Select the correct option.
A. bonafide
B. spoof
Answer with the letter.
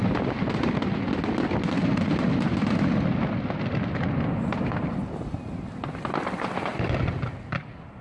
A